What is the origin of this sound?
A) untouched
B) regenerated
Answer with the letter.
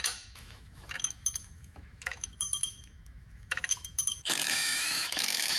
B